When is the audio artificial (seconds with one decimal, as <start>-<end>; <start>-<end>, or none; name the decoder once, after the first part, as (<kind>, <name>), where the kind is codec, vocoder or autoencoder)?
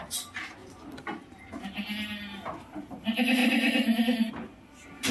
none